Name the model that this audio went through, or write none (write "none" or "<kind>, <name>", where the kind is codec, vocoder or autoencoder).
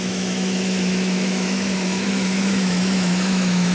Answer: autoencoder, DAC-VAE